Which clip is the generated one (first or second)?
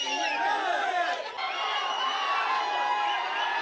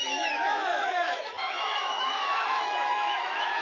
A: second